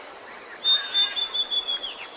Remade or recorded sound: recorded